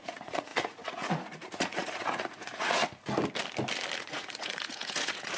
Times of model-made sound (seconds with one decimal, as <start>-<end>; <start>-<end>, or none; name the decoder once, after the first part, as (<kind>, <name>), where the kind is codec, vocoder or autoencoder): 0.0-2.8 (vocoder, Vocos); 4.0-5.4